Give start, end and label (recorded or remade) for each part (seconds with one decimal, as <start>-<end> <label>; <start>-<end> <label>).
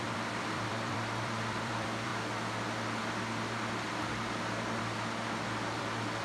0.0-2.1 remade; 2.1-5.8 recorded; 5.8-6.2 remade